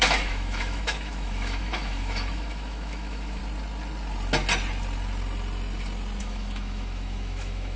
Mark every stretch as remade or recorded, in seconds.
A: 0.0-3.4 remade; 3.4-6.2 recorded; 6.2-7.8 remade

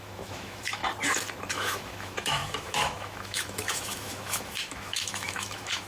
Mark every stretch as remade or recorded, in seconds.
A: 0.0-0.8 remade; 0.8-1.5 recorded; 1.5-5.9 remade

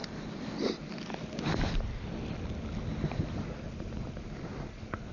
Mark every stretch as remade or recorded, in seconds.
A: 0.0-5.1 recorded

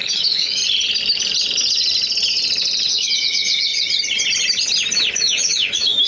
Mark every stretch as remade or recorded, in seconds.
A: 0.0-0.6 remade; 0.6-2.9 recorded; 2.9-3.7 remade; 3.7-5.1 recorded; 5.1-6.1 remade

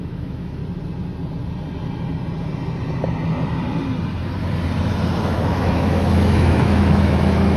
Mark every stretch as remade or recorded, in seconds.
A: 0.0-0.6 remade; 0.6-5.2 recorded; 5.2-7.6 remade

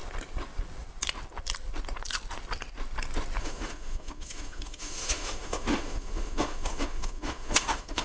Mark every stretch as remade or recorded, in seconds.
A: 0.0-3.4 recorded; 3.4-8.0 remade

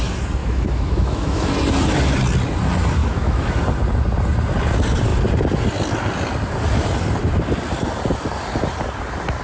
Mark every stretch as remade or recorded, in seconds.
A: 0.0-0.4 recorded; 0.4-1.5 remade; 1.5-3.0 recorded; 3.0-3.5 remade; 3.5-9.4 recorded